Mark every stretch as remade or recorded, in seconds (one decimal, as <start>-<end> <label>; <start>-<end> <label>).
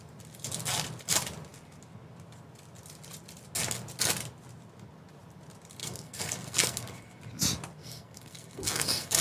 0.0-5.8 recorded; 5.8-7.2 remade; 7.2-7.8 recorded; 7.8-9.2 remade